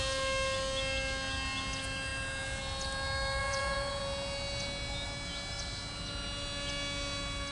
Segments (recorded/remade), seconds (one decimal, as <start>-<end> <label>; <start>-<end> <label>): 0.0-3.4 recorded; 3.4-4.0 remade; 4.0-7.5 recorded